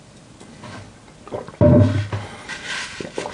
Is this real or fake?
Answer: real